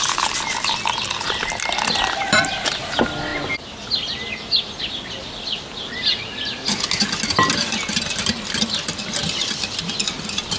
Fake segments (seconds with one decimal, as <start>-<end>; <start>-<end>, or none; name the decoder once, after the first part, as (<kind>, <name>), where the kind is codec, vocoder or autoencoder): none